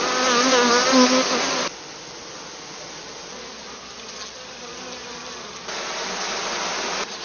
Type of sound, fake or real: real